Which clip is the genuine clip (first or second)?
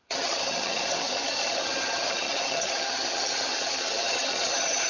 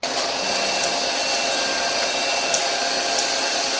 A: second